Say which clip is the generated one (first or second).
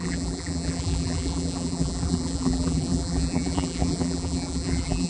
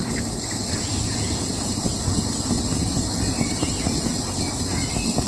first